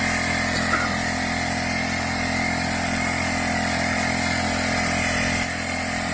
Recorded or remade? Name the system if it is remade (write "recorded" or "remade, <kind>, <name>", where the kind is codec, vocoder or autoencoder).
recorded